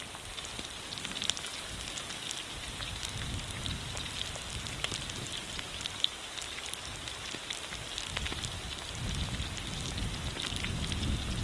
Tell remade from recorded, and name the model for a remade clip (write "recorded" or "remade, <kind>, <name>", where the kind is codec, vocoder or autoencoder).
recorded